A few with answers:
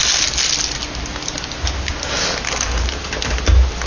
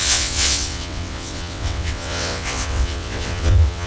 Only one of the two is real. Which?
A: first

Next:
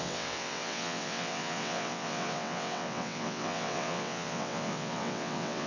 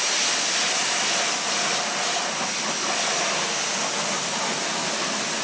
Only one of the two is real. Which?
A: second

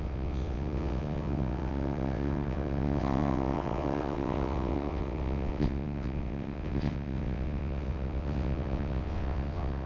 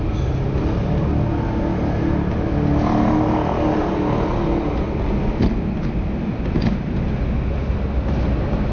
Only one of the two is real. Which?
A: second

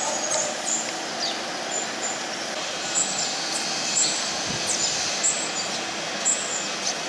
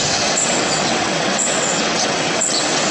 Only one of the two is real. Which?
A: first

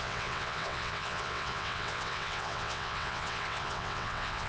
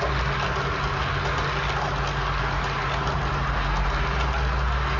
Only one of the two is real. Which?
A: second